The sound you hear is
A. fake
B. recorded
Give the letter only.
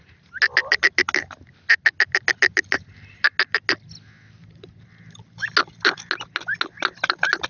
B